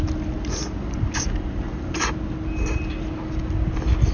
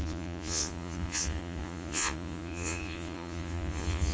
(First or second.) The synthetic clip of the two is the second